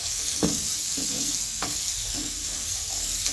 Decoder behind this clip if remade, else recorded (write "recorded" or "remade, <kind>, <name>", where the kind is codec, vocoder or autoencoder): remade, codec, SNAC